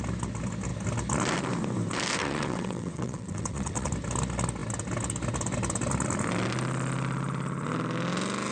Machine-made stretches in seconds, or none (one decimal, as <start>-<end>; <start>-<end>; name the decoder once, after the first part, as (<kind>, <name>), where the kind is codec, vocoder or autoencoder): 2.2-3.9 (vocoder, WaveNeXt)